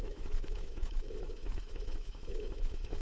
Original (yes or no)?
no